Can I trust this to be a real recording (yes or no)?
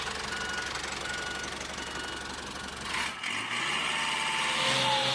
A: yes